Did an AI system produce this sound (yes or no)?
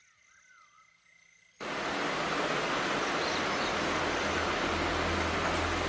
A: no